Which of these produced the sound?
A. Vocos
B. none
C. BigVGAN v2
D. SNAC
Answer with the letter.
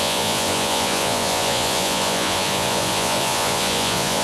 A